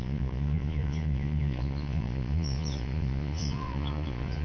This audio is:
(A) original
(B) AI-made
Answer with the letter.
B